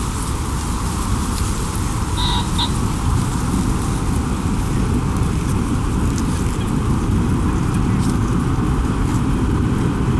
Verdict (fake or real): real